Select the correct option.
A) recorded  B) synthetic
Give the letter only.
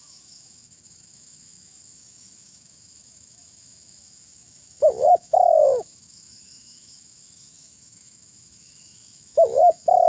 B